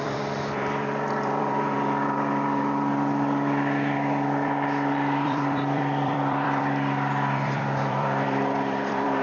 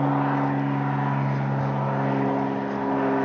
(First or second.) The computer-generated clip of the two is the first